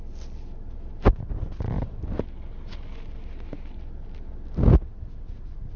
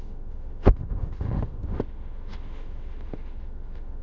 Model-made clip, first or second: second